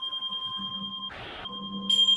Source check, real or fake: real